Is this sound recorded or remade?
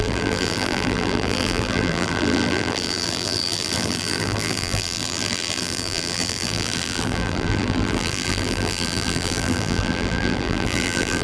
remade